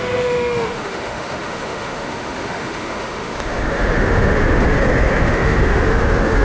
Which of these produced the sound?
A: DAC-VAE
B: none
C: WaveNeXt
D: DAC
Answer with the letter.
A